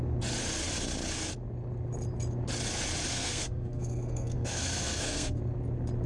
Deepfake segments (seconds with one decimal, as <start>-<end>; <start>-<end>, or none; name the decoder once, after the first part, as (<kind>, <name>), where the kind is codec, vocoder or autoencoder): 3.1-5.4 (codec, SNAC)